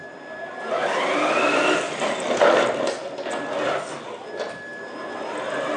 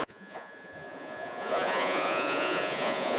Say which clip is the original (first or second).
first